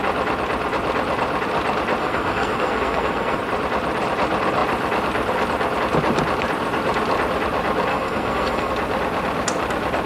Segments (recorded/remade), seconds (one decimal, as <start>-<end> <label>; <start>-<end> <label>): 0.0-2.0 recorded; 2.0-3.4 remade; 3.4-7.9 recorded; 7.9-8.7 remade; 8.7-10.1 recorded